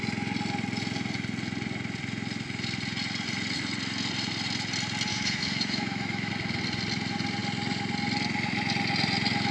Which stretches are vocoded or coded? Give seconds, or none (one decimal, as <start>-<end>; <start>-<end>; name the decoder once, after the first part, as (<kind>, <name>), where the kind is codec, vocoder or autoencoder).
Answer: 5.1-6.3 (autoencoder, DAC-VAE)